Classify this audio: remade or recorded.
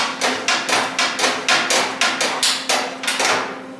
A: recorded